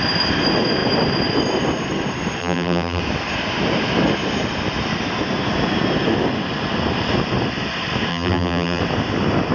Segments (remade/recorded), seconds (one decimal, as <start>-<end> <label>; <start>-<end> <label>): 0.0-2.4 recorded; 2.4-3.0 remade; 3.0-8.1 recorded; 8.1-8.8 remade; 8.8-9.5 recorded